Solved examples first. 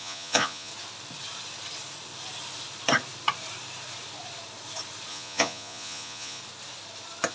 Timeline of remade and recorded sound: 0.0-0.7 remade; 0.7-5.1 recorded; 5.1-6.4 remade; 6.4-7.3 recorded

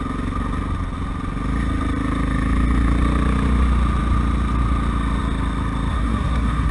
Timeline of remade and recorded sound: 0.0-5.9 recorded; 5.9-6.7 remade